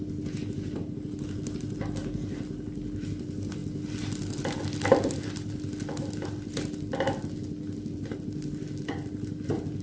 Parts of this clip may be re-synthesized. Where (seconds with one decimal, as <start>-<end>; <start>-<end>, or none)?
none